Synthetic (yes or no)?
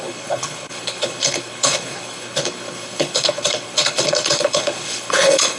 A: yes